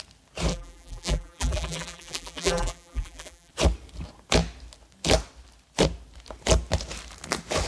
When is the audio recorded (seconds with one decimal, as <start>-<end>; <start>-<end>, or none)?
0.0-0.5; 3.5-7.7